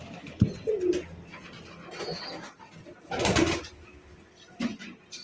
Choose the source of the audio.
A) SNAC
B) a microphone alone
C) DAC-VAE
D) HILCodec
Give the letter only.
B